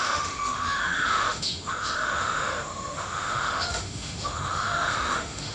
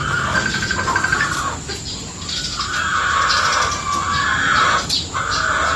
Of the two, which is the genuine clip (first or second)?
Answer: second